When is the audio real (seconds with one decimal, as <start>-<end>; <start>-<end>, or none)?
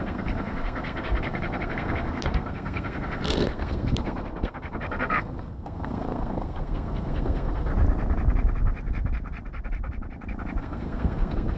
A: 7.7-10.6